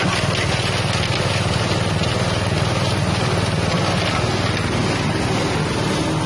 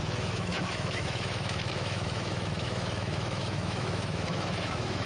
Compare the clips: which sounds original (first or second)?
first